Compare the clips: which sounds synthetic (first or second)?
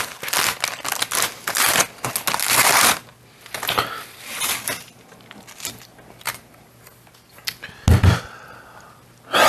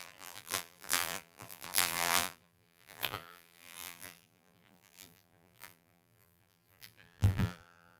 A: second